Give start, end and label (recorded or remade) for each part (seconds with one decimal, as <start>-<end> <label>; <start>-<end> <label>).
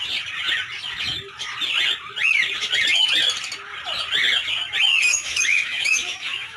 0.0-5.1 recorded; 5.1-6.6 remade